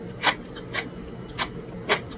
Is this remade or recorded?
remade